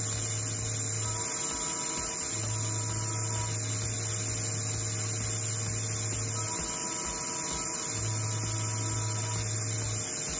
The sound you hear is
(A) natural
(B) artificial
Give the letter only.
A